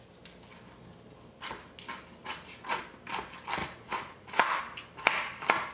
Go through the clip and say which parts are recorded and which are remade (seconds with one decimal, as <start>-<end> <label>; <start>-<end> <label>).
0.0-2.2 recorded; 2.2-2.8 remade; 2.8-3.6 recorded; 3.6-4.6 remade; 4.6-5.7 recorded